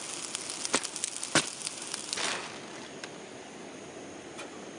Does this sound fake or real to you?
real